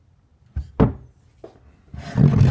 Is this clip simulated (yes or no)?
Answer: no